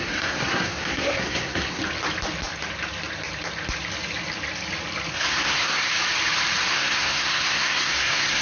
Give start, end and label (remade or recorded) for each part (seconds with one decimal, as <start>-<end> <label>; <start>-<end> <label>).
0.0-1.8 remade; 1.8-5.1 recorded; 5.1-5.9 remade; 5.9-6.7 recorded; 6.7-8.4 remade